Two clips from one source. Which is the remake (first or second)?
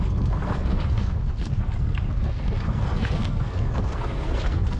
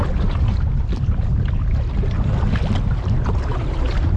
first